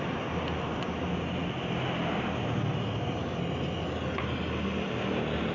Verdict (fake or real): real